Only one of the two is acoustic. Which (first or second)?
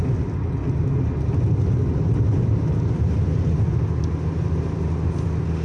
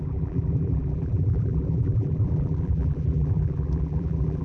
first